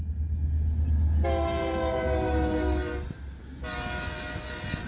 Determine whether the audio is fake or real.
real